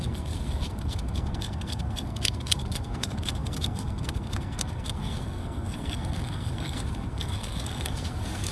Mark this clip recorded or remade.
remade